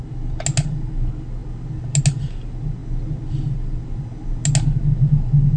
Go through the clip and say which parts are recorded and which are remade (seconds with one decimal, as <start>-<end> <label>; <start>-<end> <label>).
0.0-5.6 recorded